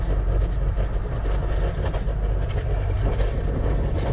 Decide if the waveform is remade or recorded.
recorded